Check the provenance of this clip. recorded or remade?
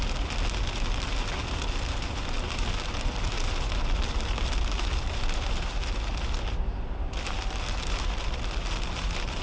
recorded